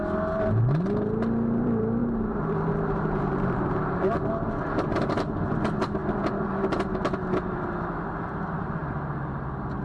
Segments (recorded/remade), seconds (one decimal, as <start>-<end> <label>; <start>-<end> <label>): 0.0-2.0 recorded; 2.0-4.2 remade; 4.2-9.8 recorded